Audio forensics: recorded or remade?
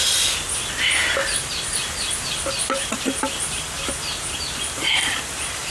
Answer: recorded